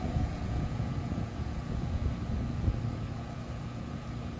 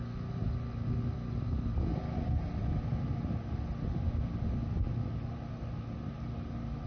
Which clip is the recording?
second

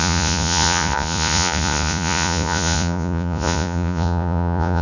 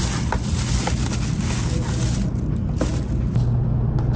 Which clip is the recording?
second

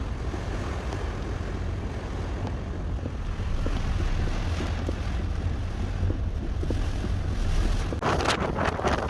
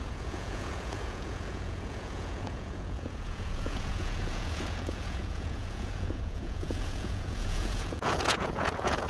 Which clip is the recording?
first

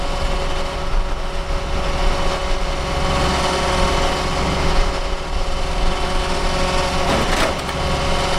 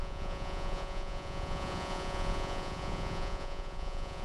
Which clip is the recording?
first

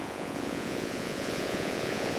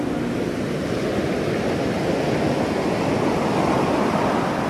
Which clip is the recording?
second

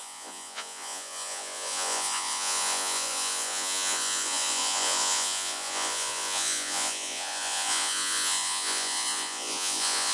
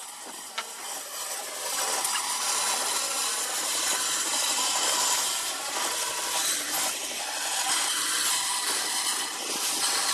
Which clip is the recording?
second